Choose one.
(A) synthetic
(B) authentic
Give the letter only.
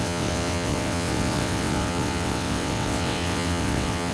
A